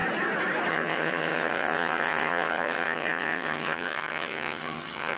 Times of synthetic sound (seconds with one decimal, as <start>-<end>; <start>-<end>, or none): 0.7-5.2